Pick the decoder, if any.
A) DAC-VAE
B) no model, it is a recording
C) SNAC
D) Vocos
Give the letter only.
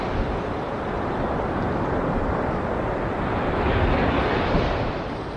B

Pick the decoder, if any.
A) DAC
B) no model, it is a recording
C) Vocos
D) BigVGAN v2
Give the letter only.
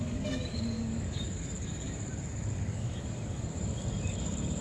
A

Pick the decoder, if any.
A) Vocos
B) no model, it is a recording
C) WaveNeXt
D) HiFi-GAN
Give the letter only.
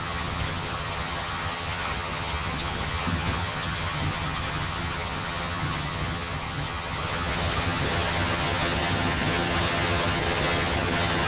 D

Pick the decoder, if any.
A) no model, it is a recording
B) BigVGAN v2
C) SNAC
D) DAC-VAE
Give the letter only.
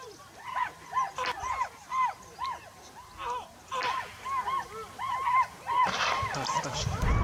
A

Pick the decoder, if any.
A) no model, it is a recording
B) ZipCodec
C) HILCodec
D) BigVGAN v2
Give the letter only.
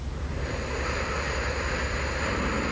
A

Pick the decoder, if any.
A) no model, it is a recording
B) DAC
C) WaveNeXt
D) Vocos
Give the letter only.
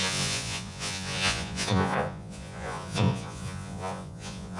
D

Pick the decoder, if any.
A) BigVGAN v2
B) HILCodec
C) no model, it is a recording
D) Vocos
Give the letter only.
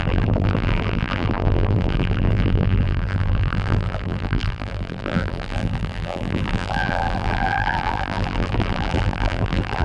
A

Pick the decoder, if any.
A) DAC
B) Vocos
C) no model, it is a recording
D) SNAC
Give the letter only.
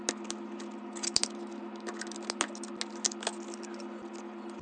C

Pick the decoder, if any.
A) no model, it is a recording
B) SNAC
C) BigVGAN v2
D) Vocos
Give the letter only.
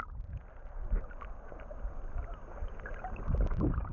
A